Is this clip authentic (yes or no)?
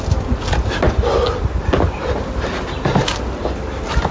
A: yes